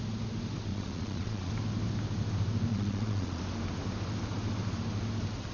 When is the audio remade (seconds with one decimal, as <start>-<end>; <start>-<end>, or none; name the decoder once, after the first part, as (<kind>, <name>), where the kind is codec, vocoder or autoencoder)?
0.7-1.5 (vocoder, Vocos); 2.7-3.4